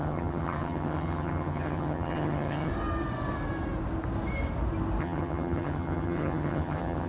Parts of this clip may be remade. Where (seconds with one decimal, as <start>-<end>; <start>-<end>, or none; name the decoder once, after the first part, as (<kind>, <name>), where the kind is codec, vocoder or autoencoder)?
0.0-2.7 (vocoder, HiFi-GAN); 5.0-7.1